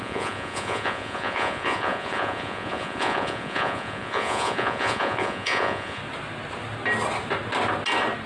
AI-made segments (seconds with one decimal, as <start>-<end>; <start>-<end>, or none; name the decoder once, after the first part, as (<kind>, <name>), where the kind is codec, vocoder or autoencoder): 0.0-6.0 (vocoder, Vocos)